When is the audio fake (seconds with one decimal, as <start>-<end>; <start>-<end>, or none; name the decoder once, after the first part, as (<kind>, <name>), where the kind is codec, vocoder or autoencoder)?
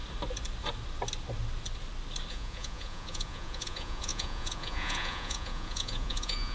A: 2.3-6.5 (vocoder, Vocos)